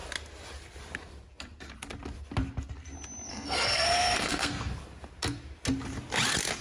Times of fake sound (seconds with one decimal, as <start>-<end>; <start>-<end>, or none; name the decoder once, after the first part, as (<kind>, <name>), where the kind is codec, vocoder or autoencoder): 3.3-4.6 (codec, SNAC)